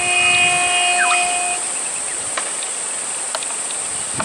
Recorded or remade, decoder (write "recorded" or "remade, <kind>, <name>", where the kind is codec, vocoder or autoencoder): recorded